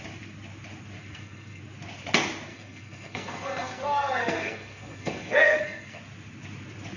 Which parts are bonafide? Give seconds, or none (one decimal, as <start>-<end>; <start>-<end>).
0.0-1.0; 1.6-2.5; 6.0-7.0